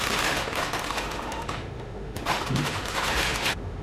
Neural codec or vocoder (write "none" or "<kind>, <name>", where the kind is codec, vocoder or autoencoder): autoencoder, DAC-VAE